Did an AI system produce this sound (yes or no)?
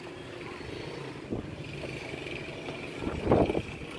no